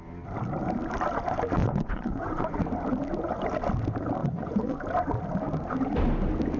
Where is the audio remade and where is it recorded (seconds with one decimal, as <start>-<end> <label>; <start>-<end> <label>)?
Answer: 0.0-1.6 recorded; 1.6-2.6 remade; 2.6-4.2 recorded; 4.2-4.8 remade; 4.8-6.6 recorded